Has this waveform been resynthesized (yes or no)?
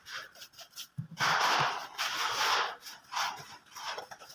yes